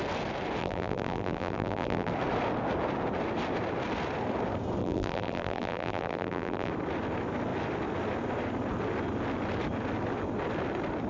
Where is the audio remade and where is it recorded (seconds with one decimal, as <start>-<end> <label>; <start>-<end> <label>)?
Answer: 0.0-0.6 recorded; 0.6-2.1 remade; 2.1-4.8 recorded; 4.8-6.7 remade; 6.7-11.1 recorded